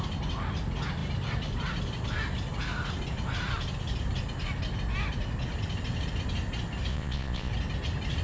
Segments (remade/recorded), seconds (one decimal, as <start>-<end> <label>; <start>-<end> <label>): 0.0-6.9 recorded; 6.9-7.5 remade; 7.5-8.2 recorded